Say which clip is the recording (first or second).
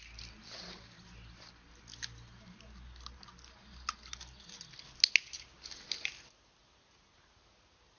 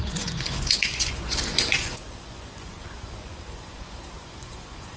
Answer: first